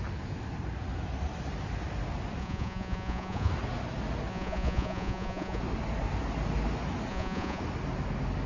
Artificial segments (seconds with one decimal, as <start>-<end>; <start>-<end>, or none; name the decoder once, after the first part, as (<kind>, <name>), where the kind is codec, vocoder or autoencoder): 2.4-3.5 (vocoder, Vocos); 4.3-5.6; 7.1-7.6